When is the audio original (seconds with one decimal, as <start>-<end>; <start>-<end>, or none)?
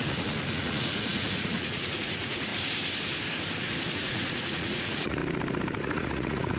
2.5-3.9; 5.2-5.8